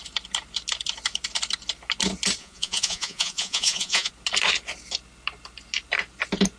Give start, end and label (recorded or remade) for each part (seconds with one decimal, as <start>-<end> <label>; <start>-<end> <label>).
0.0-2.4 recorded; 2.4-4.1 remade; 4.1-6.6 recorded